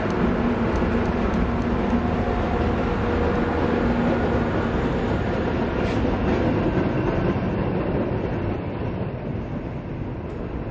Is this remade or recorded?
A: recorded